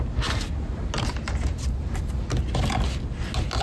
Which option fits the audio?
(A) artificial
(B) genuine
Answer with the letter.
B